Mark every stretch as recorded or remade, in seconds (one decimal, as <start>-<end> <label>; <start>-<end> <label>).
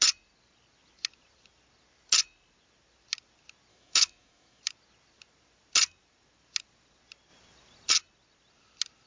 0.0-3.7 recorded; 3.7-4.6 remade; 4.6-9.1 recorded